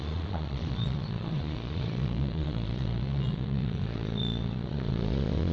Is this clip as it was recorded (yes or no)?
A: no